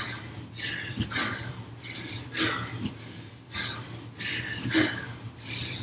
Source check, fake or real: real